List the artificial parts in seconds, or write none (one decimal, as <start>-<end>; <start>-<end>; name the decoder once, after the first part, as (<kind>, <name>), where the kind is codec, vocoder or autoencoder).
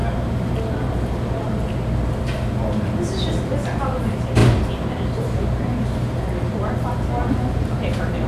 none